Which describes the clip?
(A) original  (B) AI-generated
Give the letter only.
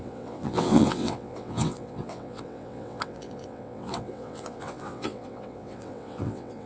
B